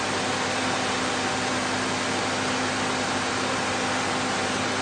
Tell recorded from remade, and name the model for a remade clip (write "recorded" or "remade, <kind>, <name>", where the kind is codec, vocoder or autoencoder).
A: recorded